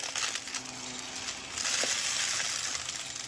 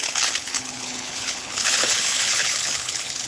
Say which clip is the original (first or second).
first